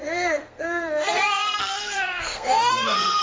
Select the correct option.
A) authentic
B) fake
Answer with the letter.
B